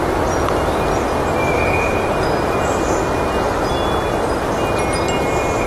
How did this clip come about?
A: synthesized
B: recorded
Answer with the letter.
B